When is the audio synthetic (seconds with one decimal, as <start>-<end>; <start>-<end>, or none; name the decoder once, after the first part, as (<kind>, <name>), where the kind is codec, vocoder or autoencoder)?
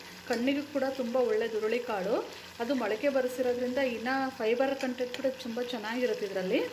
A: none